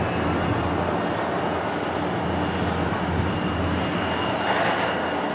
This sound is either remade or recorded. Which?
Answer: recorded